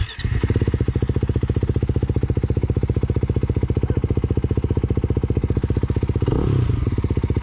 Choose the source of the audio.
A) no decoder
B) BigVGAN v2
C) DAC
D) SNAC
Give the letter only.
A